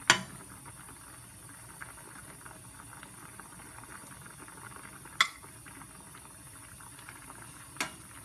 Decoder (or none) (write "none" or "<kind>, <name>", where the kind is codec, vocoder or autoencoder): none